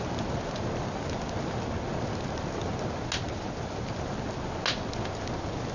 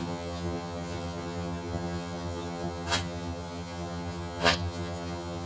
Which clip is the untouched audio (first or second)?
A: first